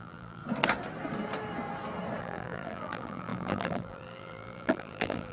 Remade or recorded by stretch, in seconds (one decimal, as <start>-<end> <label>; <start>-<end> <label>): 0.0-0.4 remade; 0.4-2.2 recorded; 2.2-5.3 remade